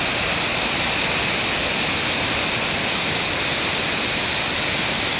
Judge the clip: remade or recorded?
recorded